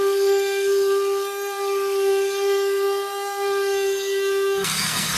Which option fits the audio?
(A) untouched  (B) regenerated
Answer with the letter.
B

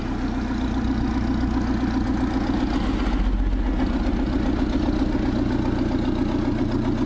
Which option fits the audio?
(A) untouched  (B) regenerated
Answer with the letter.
A